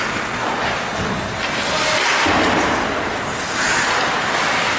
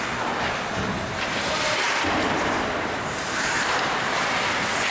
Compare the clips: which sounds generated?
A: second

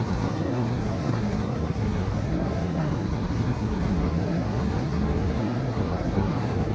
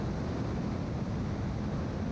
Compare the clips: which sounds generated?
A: first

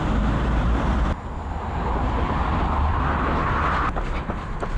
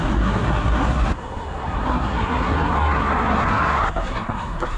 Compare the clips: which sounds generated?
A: second